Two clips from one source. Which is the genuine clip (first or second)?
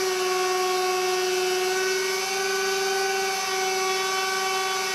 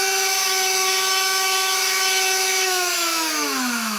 first